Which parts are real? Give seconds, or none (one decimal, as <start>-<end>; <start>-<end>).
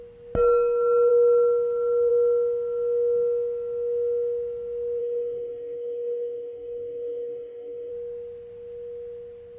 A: 0.0-5.0; 7.9-9.6